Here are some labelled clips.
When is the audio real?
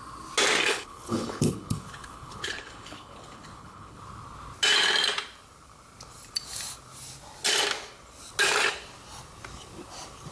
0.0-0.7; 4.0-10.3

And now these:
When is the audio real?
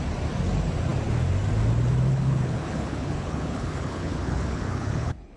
0.0-2.1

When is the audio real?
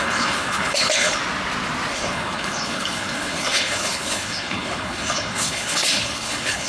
1.2-1.9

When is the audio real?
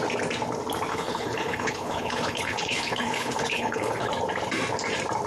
0.0-0.9; 4.1-5.3